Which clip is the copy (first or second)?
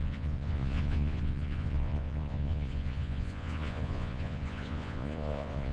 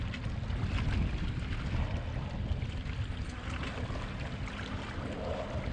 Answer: first